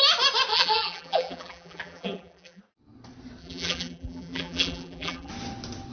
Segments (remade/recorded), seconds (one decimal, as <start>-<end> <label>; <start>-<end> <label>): 0.0-0.5 recorded; 0.5-2.6 remade; 2.6-3.4 recorded; 3.4-5.3 remade; 5.3-5.9 recorded